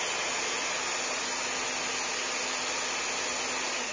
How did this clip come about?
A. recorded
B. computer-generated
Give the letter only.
A